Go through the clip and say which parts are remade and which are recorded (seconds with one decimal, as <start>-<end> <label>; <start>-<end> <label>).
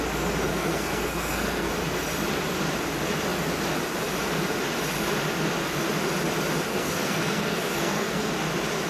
0.0-0.5 recorded; 0.5-1.7 remade; 1.7-6.7 recorded; 6.7-8.3 remade; 8.3-8.9 recorded